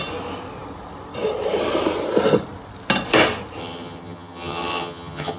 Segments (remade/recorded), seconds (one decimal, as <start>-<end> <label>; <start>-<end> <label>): 0.0-3.6 recorded; 3.6-5.4 remade